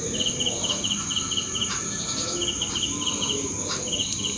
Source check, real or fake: real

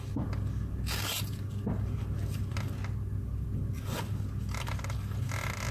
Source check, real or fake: real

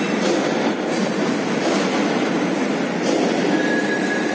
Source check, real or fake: real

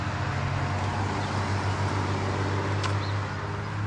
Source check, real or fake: real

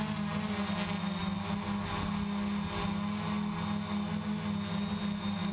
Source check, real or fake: real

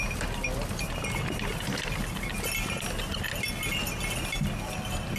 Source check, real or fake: real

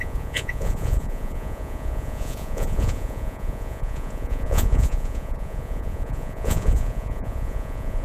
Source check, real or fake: fake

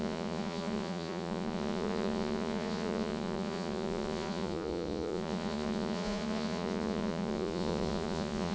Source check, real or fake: fake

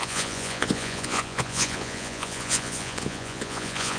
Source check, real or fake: fake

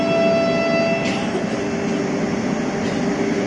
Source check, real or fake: real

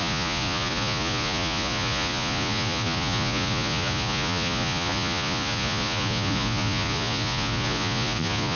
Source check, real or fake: fake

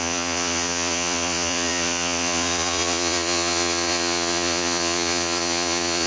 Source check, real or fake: fake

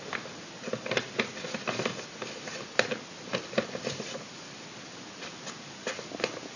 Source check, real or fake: real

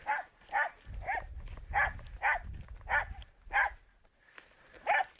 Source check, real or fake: real